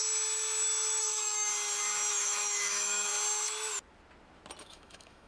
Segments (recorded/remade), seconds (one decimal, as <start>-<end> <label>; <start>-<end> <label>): 0.0-1.0 recorded; 1.0-1.5 remade; 1.5-2.1 recorded; 2.1-3.1 remade; 3.1-4.6 recorded; 4.6-5.3 remade